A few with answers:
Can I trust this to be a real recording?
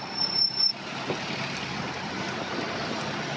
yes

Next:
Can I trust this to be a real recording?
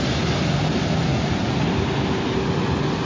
yes